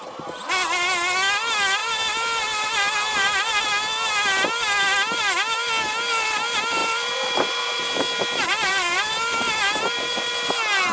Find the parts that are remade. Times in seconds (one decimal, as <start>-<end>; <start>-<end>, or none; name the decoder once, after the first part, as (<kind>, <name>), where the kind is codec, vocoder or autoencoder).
1.8-3.6 (vocoder, BigVGAN v2); 6.8-10.3